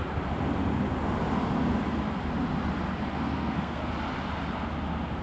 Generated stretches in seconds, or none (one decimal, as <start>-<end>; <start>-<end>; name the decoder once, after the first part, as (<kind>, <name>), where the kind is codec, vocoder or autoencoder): 3.1-3.8 (codec, SNAC)